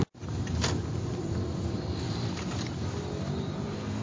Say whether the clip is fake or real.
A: real